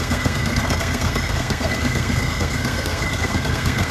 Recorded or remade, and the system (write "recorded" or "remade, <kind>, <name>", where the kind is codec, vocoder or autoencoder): remade, codec, SNAC